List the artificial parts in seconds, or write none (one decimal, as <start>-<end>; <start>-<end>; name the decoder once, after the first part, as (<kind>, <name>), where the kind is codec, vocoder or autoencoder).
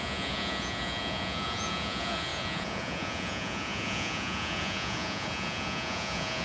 0.0-6.4 (vocoder, Vocos)